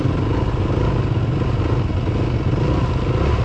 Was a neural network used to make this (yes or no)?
no